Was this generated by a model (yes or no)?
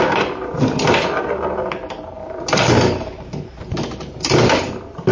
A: no